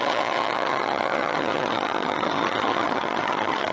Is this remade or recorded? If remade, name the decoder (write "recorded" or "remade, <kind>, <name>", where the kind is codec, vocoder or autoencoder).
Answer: remade, vocoder, HiFi-GAN